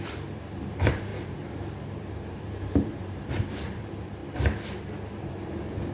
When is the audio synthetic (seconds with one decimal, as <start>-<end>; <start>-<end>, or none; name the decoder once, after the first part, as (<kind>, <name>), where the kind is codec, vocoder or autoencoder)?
0.0-4.2 (vocoder, BigVGAN v2); 5.2-5.9